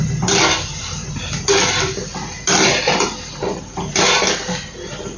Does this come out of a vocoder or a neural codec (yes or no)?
no